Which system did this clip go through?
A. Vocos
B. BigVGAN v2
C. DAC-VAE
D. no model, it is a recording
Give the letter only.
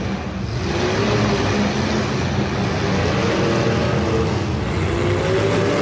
D